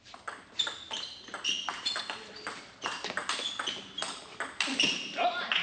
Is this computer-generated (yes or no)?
no